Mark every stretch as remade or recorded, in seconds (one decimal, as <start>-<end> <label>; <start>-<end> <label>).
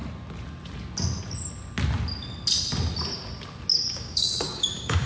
0.0-3.7 recorded; 3.7-5.1 remade